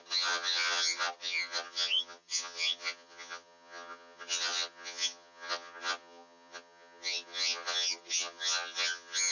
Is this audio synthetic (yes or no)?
yes